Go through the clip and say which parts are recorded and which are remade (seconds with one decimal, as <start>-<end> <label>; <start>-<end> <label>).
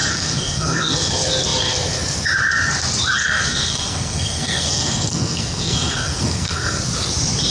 0.0-1.1 remade; 1.1-3.2 recorded; 3.2-6.8 remade; 6.8-7.5 recorded